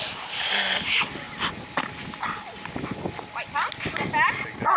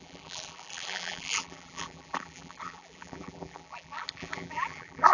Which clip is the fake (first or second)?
second